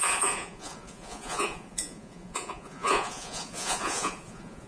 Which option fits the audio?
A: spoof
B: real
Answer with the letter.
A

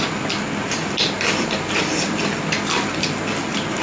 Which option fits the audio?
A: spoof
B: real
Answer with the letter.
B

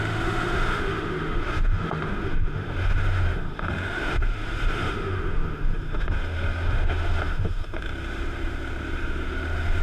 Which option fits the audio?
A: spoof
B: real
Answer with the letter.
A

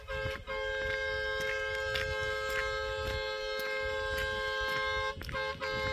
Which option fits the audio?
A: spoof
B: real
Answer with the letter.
B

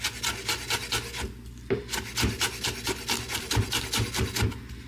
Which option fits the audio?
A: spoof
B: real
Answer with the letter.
B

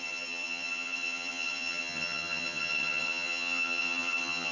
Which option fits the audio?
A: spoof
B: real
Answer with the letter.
A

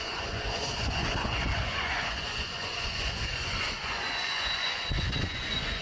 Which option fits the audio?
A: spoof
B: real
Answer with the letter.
A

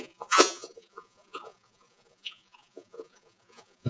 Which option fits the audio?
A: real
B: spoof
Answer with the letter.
B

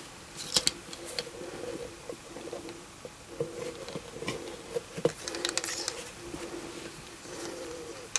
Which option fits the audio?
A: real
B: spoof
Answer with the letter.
A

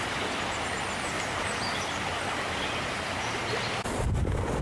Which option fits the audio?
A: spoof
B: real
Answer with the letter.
B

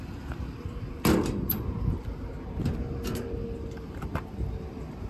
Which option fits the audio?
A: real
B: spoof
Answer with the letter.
A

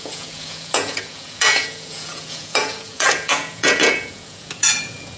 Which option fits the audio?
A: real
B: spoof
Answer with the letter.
B